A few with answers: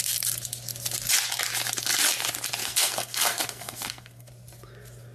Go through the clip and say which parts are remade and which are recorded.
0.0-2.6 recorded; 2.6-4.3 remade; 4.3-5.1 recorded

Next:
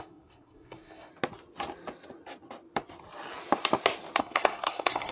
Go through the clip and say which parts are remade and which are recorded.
0.0-1.1 remade; 1.1-4.2 recorded; 4.2-5.1 remade

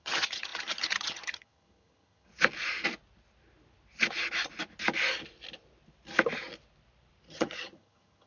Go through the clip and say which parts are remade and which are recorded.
0.0-2.3 remade; 2.3-7.3 recorded; 7.3-8.3 remade

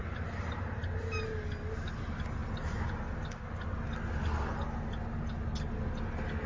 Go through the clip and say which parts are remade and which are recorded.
0.0-6.5 recorded

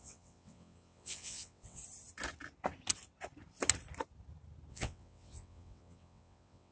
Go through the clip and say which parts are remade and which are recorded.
0.0-1.8 remade; 1.8-4.7 recorded; 4.7-6.7 remade